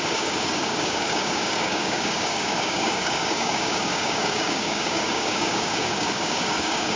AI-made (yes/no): yes